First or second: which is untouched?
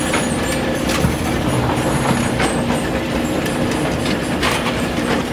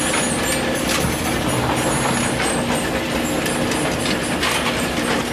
second